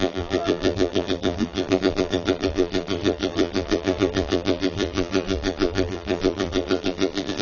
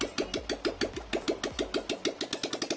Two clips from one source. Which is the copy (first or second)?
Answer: first